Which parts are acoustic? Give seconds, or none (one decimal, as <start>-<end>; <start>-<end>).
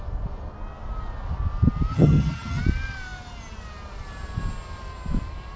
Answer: 0.0-1.9; 2.6-5.6